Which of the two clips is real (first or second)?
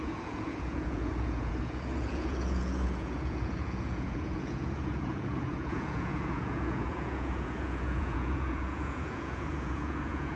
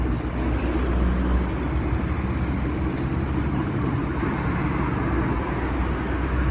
second